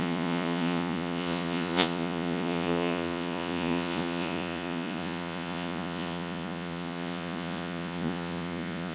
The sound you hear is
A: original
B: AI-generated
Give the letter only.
B